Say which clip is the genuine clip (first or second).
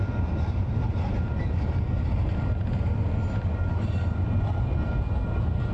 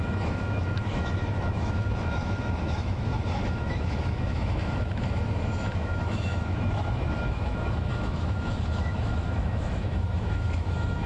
first